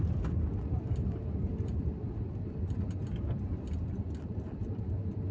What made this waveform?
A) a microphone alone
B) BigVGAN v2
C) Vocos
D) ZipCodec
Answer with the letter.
A